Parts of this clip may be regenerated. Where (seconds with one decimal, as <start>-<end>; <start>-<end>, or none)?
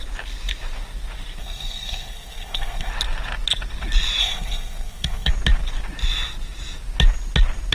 1.4-2.9; 4.2-5.3